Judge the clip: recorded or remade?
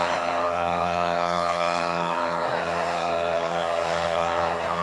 remade